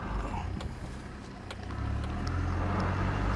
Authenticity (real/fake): real